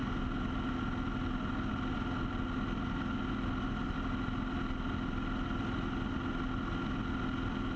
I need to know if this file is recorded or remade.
recorded